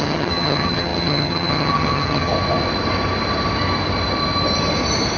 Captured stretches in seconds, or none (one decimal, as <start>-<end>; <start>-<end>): 2.3-5.2